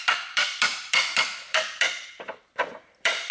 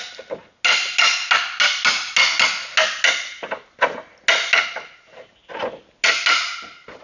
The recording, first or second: second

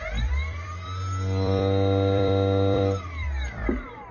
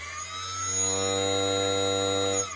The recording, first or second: second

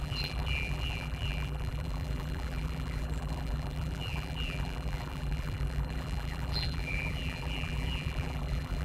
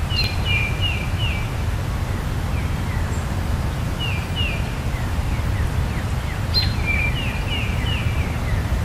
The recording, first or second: second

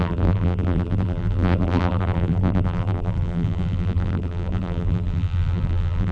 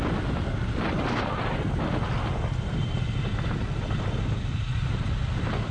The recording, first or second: second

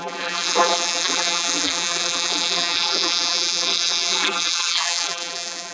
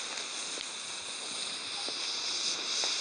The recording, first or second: second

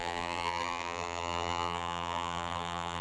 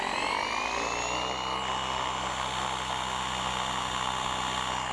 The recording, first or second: second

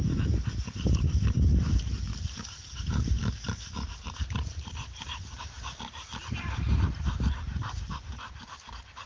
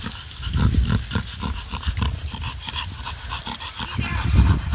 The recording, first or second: second